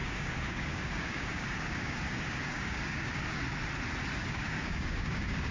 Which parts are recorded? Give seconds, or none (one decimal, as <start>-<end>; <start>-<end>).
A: 3.4-4.2